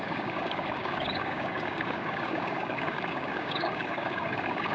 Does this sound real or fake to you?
fake